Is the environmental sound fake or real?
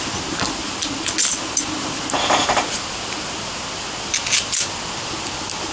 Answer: real